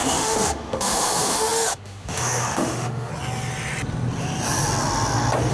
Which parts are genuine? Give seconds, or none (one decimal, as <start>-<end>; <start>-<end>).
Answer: 3.1-5.5